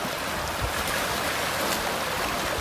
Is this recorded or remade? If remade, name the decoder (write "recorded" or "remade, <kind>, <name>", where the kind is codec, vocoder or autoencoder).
recorded